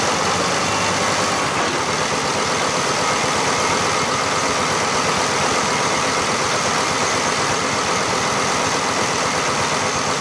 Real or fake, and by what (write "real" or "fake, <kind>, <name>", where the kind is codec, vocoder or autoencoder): real